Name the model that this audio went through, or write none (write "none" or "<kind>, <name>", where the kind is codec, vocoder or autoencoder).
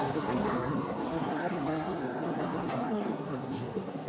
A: codec, SNAC